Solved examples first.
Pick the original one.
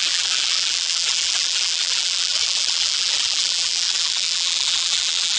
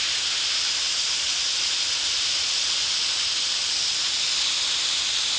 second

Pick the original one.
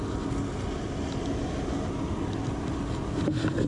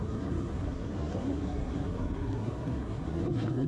first